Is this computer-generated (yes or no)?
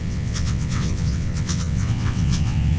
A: yes